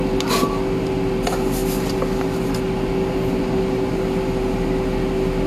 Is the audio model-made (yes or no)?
no